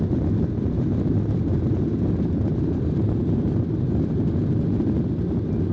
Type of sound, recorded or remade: remade